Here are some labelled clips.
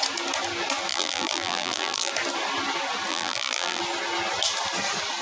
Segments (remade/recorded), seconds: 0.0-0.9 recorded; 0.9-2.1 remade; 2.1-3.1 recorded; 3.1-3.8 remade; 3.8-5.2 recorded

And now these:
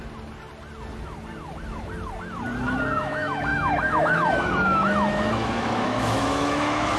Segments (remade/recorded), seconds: 0.0-3.0 recorded; 3.0-7.0 remade

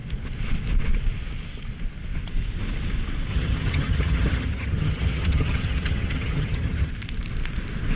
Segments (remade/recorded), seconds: 0.0-3.3 recorded; 3.3-6.9 remade; 6.9-8.0 recorded

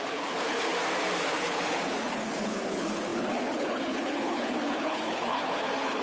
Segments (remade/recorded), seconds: 0.0-0.7 remade; 0.7-1.2 recorded; 1.2-6.0 remade

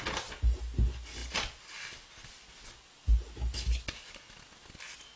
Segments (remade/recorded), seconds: 0.0-5.2 recorded

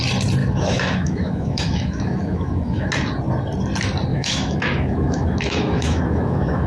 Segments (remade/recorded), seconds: 0.0-0.4 recorded; 0.4-2.9 remade; 2.9-4.1 recorded; 4.1-6.7 remade

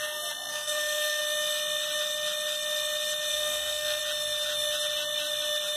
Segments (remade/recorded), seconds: 0.0-0.5 recorded; 0.5-1.2 remade; 1.2-3.3 recorded; 3.3-4.0 remade; 4.0-5.8 recorded

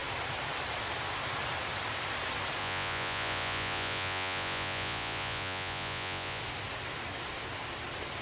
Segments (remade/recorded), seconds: 0.0-2.6 recorded; 2.6-6.4 remade; 6.4-8.2 recorded